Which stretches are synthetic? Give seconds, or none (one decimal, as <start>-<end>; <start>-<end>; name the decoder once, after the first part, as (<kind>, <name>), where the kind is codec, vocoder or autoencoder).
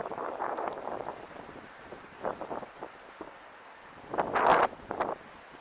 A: 0.0-3.3 (vocoder, BigVGAN v2)